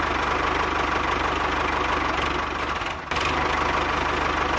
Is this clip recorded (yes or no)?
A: yes